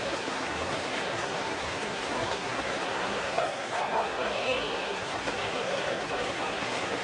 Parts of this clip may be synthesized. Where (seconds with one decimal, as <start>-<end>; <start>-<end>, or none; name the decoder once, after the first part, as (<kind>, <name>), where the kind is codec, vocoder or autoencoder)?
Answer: 0.0-7.0 (codec, SNAC)